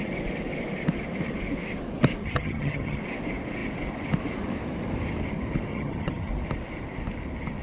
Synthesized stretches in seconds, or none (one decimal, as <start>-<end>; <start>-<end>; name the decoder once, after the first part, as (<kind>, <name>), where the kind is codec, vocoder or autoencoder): 2.2-3.0 (vocoder, HiFi-GAN); 5.7-6.3